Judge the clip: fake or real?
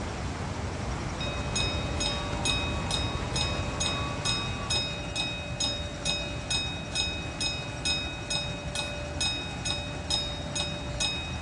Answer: real